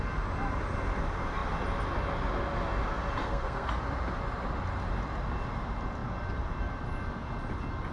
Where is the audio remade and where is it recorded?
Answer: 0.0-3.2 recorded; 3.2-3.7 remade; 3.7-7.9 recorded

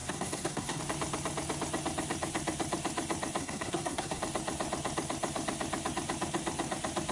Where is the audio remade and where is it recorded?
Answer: 0.0-0.8 remade; 0.8-3.4 recorded; 3.4-4.2 remade; 4.2-7.1 recorded

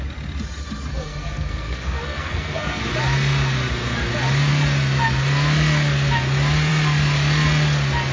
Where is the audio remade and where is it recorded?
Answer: 0.0-0.9 recorded; 0.9-2.8 remade; 2.8-8.1 recorded